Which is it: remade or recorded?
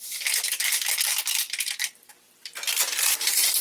remade